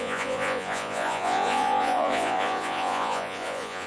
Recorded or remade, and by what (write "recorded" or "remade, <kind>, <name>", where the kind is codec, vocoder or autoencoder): remade, vocoder, Vocos